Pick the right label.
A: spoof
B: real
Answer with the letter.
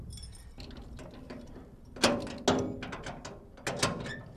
B